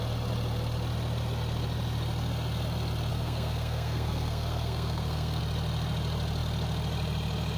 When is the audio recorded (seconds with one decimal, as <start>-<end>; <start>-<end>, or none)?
0.0-3.1; 5.4-7.6